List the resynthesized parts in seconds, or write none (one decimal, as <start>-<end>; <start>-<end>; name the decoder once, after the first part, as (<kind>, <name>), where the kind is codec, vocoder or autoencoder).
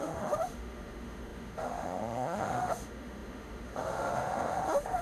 0.0-5.0 (autoencoder, DAC-VAE)